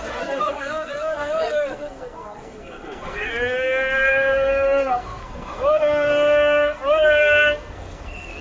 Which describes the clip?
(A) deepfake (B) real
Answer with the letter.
A